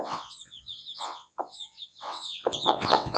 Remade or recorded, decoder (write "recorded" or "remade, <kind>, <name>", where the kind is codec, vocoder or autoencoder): remade, vocoder, WaveNeXt